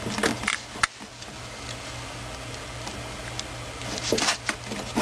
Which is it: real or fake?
fake